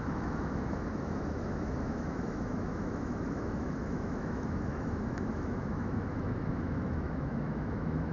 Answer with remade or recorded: remade